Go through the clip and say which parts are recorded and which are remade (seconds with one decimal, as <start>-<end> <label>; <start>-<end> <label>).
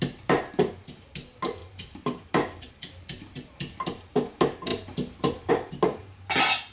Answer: 0.0-6.7 recorded